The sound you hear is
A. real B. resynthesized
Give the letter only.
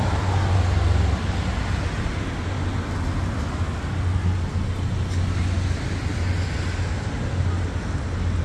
A